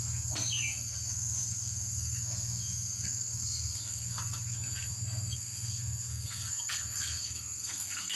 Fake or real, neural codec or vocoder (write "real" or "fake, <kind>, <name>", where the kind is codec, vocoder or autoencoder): fake, codec, SNAC